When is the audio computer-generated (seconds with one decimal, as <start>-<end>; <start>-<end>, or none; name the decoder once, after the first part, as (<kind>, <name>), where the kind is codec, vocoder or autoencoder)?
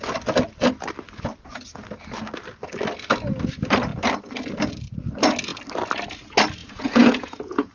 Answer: 6.6-7.7 (vocoder, Vocos)